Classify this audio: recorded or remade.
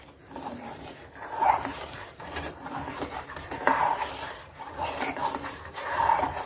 remade